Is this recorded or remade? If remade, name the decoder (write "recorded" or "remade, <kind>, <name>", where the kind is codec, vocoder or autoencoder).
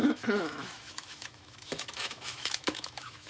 remade, autoencoder, DAC-VAE